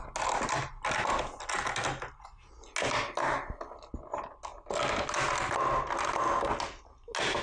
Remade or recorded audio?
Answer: recorded